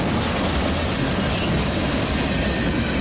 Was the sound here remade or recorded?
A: recorded